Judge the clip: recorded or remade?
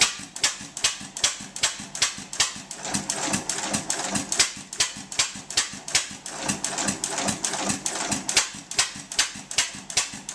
recorded